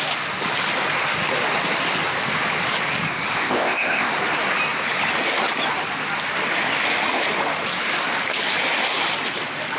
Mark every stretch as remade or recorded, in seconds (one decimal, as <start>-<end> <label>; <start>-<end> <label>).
0.0-3.3 recorded; 3.3-4.1 remade; 4.1-9.8 recorded